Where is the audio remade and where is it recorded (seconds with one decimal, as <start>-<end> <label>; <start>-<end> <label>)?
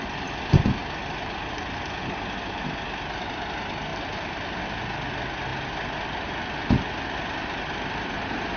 0.0-8.6 recorded